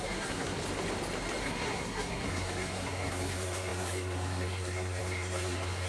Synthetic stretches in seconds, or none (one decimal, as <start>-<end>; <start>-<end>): 0.0-0.6; 1.4-5.9